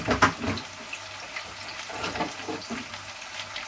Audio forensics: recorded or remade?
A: recorded